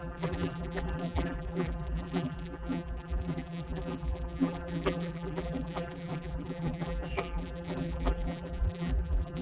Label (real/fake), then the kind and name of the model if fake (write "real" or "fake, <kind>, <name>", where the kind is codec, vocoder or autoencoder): fake, vocoder, BigVGAN v2